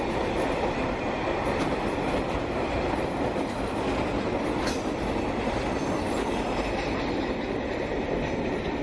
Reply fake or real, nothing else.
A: real